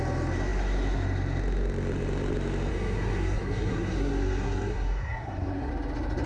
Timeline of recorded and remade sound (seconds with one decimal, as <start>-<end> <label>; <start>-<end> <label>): 0.0-2.7 recorded; 2.7-5.7 remade; 5.7-6.3 recorded